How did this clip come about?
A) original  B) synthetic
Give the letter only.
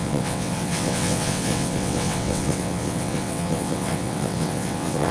B